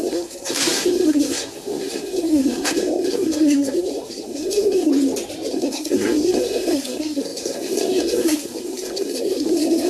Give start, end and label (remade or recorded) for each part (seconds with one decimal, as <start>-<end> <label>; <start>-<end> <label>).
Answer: 0.0-4.9 remade; 4.9-5.5 recorded; 5.5-9.9 remade